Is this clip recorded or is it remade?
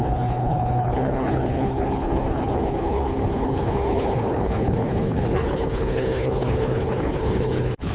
remade